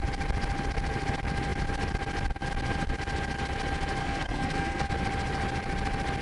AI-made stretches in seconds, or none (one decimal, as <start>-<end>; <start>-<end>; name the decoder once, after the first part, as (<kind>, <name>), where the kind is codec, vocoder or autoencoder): 4.0-4.9 (codec, SNAC)